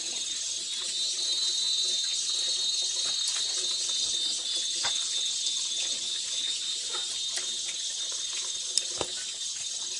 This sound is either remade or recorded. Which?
recorded